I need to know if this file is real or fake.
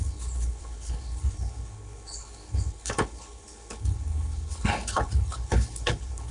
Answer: fake